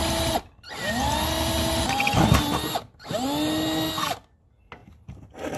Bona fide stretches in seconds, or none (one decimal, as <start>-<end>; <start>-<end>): 0.0-4.8